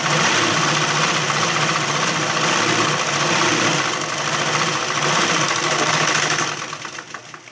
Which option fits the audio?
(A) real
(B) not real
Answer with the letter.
A